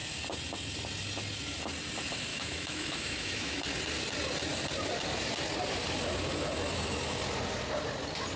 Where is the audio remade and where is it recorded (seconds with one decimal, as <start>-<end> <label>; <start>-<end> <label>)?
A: 0.0-2.3 recorded; 2.3-3.6 remade; 3.6-8.4 recorded